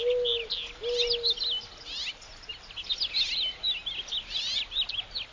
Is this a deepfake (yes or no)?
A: no